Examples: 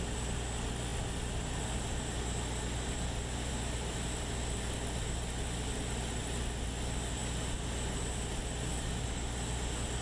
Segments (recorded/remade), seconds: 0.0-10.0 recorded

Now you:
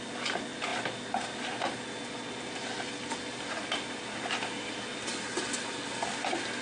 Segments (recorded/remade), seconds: 0.0-6.6 recorded